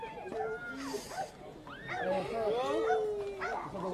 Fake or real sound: real